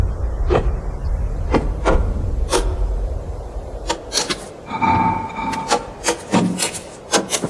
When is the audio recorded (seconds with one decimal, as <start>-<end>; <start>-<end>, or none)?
0.0-1.0; 3.9-7.5